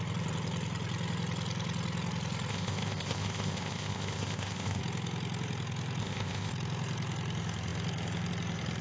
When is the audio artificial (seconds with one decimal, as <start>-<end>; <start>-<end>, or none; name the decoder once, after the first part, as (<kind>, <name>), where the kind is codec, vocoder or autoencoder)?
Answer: 2.5-4.8 (codec, ZipCodec); 6.0-6.5